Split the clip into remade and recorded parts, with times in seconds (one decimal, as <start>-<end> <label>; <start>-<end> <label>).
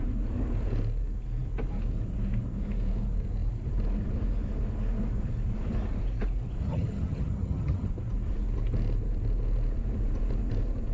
0.0-6.6 recorded; 6.6-7.9 remade; 7.9-10.9 recorded